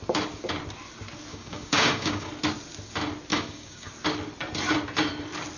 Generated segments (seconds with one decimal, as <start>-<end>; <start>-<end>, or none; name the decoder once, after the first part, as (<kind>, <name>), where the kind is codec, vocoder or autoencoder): 1.3-2.3 (codec, DAC); 3.3-3.9